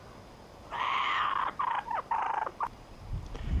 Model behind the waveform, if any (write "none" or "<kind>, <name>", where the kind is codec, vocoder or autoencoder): none